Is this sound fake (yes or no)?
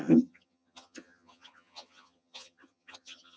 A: yes